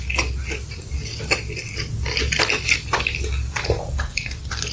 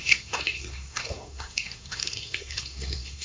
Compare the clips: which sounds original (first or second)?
first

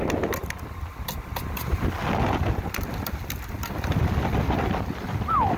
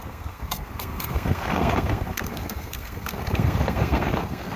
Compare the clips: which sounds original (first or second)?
first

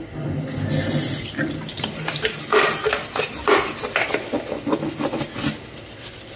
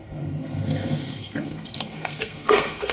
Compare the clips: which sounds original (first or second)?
first